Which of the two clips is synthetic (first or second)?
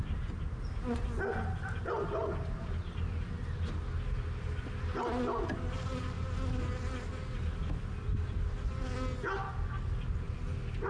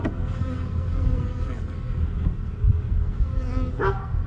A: second